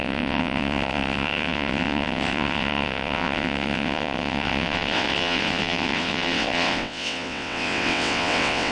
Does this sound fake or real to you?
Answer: fake